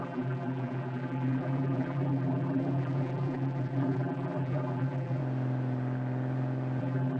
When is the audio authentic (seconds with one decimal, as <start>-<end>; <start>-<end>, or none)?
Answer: 5.2-6.8